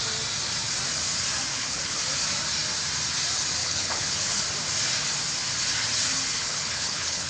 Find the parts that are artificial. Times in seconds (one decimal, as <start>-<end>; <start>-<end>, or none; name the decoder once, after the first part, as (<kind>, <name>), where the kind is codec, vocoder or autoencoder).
1.5-2.0 (codec, HILCodec); 3.6-4.4; 6.4-7.3